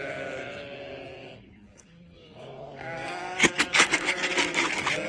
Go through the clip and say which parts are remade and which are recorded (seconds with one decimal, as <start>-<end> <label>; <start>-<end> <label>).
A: 0.0-1.2 recorded; 1.2-4.3 remade; 4.3-5.1 recorded